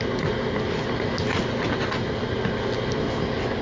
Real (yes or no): yes